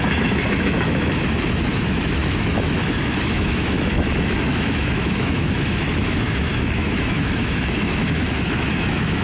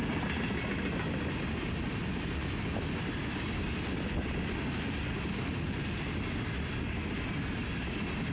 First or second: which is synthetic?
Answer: first